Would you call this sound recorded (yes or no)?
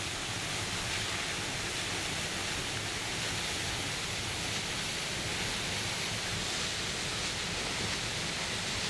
yes